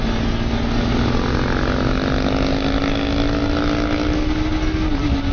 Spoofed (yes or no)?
no